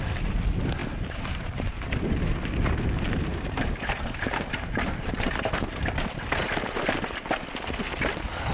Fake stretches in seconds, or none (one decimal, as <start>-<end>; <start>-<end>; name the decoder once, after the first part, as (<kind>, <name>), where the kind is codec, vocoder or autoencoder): 0.8-2.2 (vocoder, BigVGAN v2); 3.3-5.7